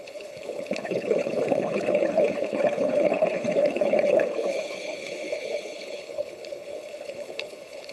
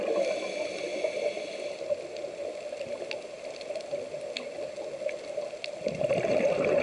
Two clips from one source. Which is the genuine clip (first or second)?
second